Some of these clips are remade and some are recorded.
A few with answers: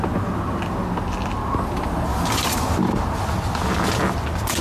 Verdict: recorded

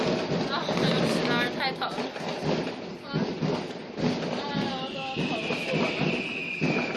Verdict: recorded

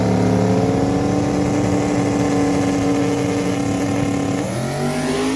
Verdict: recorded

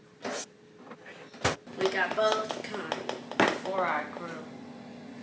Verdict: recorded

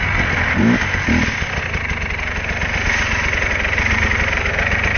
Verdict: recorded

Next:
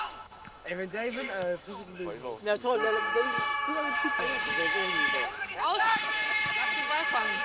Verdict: remade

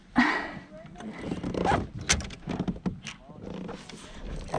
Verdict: recorded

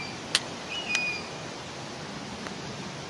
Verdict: recorded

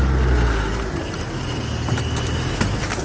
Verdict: recorded